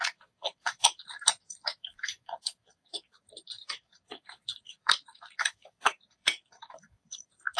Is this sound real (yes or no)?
no